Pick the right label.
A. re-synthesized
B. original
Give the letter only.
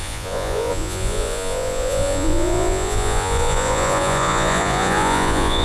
A